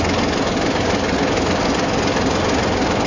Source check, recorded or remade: recorded